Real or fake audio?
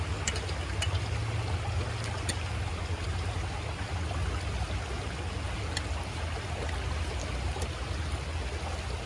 real